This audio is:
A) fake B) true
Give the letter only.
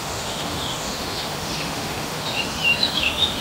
A